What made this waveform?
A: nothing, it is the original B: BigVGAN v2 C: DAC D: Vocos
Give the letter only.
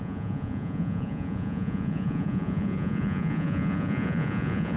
D